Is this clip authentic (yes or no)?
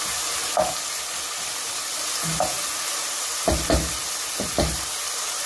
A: yes